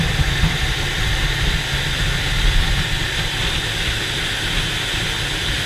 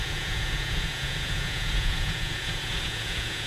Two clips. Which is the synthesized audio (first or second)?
second